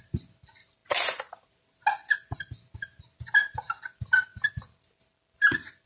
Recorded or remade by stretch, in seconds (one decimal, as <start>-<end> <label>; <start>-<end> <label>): 0.0-5.9 recorded

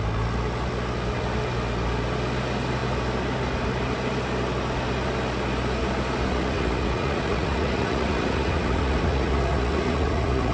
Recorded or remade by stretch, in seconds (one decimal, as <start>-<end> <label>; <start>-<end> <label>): 0.0-6.3 recorded; 6.3-10.5 remade

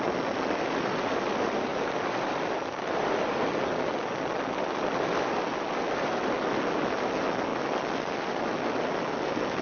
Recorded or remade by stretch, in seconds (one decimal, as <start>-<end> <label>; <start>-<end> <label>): 0.0-9.6 recorded

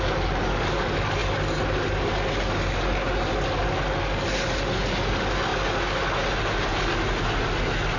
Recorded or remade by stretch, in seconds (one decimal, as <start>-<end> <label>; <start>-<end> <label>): 0.0-8.0 recorded

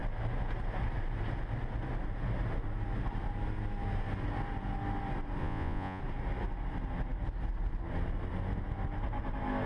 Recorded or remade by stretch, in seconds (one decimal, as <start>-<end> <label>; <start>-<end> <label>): 0.0-5.4 recorded; 5.4-6.0 remade; 6.0-9.7 recorded

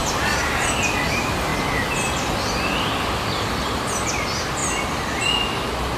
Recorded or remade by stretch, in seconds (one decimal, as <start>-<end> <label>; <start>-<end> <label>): 0.0-6.0 recorded